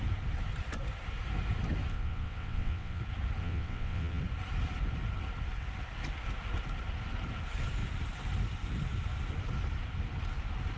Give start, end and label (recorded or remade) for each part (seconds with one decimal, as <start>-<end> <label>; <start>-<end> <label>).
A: 0.0-1.9 recorded; 1.9-3.0 remade; 3.0-3.4 recorded; 3.4-4.2 remade; 4.2-10.8 recorded